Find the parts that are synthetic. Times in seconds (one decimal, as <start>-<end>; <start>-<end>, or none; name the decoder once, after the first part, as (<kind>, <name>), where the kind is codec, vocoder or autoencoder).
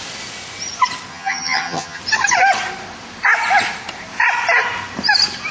1.1-2.0 (vocoder, HiFi-GAN)